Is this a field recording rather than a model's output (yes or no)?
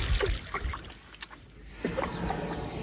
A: yes